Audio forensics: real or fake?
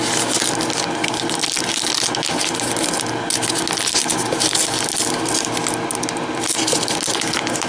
real